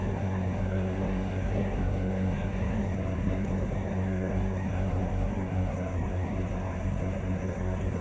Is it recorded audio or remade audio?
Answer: remade